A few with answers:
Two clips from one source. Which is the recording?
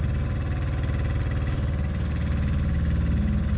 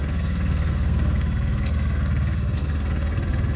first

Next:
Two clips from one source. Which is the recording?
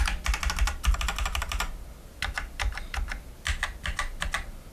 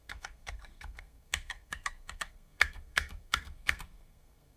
first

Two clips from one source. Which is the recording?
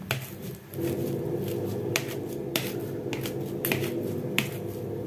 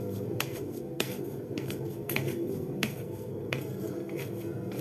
first